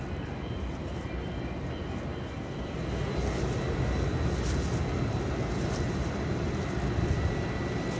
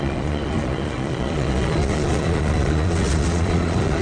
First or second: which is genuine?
first